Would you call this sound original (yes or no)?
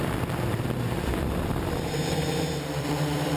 no